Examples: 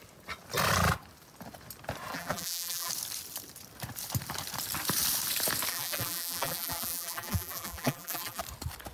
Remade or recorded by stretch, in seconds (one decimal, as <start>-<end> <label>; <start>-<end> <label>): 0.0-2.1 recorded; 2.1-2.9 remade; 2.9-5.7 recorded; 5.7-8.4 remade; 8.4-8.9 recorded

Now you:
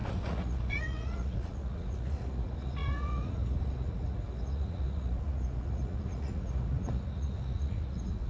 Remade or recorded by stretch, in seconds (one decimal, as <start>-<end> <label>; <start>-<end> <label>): 0.0-8.3 remade

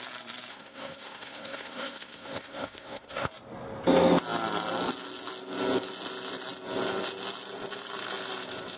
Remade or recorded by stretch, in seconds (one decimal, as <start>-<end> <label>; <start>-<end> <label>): 0.0-0.5 recorded; 0.5-3.3 remade; 3.3-8.8 recorded